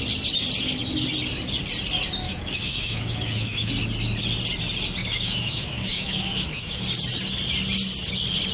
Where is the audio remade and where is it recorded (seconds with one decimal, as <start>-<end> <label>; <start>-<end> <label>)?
0.0-2.2 recorded; 2.2-3.7 remade; 3.7-5.0 recorded; 5.0-6.8 remade; 6.8-8.5 recorded

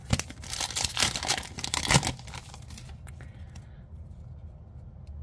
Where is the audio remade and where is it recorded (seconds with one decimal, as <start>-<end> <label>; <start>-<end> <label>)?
0.0-5.2 recorded